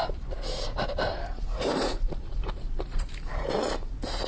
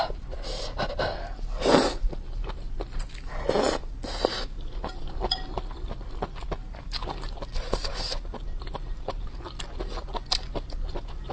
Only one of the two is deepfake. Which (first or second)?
first